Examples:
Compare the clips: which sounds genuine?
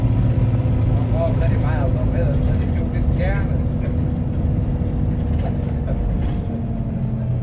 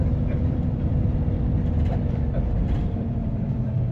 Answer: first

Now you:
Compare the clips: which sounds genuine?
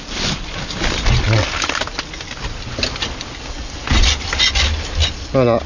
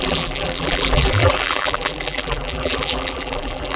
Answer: first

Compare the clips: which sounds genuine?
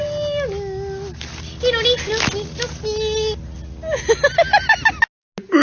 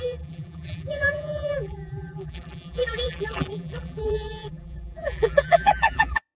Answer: first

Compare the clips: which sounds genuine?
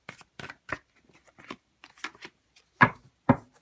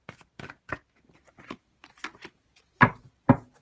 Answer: second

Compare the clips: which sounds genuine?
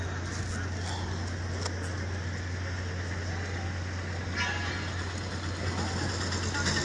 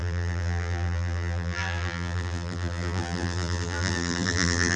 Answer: first